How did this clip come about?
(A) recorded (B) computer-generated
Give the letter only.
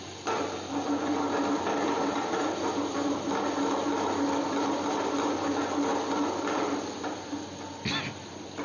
A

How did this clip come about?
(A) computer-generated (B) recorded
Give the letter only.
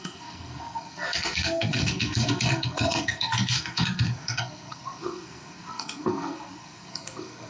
A